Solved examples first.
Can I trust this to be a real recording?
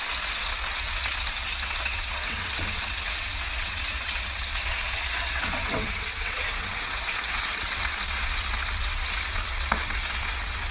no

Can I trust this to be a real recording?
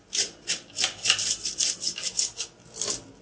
yes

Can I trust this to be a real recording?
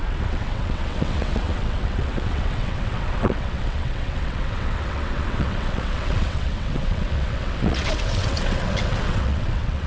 no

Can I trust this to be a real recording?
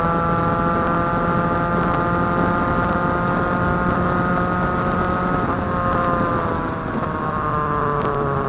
yes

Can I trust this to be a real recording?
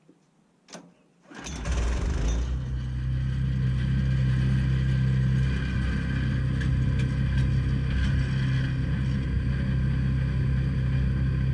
yes